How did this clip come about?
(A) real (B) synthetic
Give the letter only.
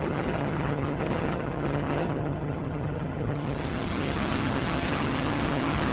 B